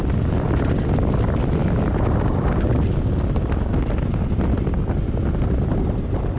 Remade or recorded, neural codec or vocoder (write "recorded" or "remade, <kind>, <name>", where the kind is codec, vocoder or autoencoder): recorded